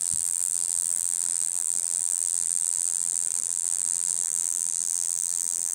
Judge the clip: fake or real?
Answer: fake